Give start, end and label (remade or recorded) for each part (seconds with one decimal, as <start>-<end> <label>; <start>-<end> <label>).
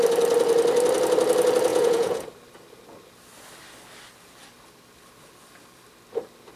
0.0-1.7 recorded; 1.7-2.2 remade; 2.2-6.6 recorded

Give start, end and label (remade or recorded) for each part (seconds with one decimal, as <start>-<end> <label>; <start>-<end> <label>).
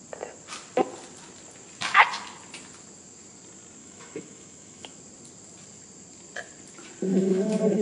0.0-3.8 recorded; 3.8-5.0 remade; 5.0-7.1 recorded; 7.1-7.8 remade